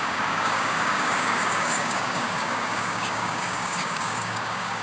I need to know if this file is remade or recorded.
remade